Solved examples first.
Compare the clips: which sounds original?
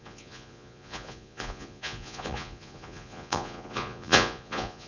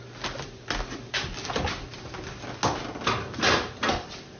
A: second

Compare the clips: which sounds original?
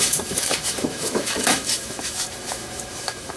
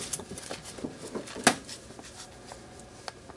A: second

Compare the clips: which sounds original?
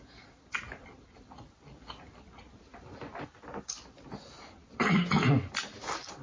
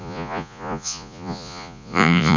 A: first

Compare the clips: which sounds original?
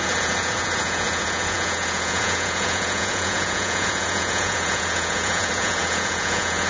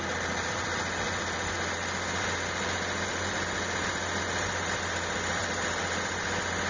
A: second